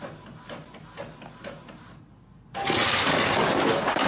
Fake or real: real